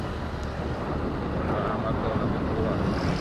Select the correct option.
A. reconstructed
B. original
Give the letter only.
B